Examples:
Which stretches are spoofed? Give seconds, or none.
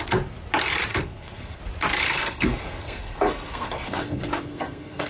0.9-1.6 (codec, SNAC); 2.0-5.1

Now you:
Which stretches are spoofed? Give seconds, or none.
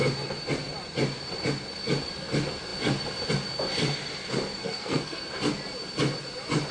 4.6-5.4 (codec, SNAC)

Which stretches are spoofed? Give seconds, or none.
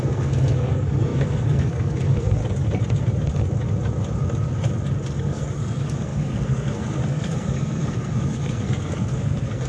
0.0-2.4 (codec, SNAC); 5.2-9.7